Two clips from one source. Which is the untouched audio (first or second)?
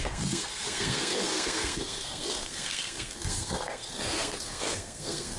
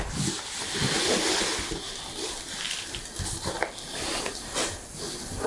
second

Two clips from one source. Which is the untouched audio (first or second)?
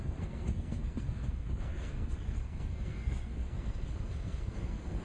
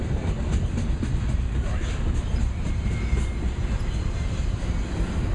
second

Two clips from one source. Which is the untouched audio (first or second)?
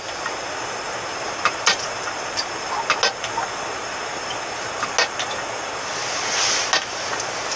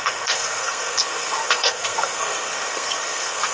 first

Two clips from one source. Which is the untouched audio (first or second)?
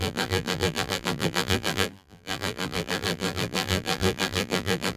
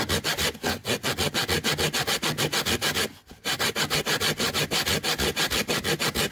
second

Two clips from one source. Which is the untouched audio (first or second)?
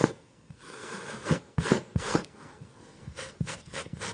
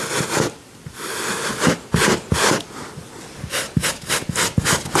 second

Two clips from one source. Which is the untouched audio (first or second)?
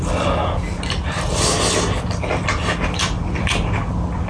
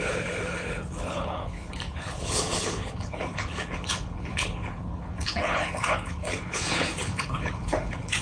first